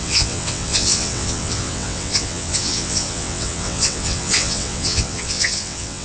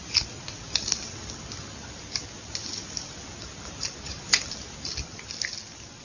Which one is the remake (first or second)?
first